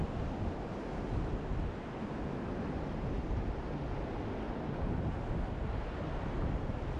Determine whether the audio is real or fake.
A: real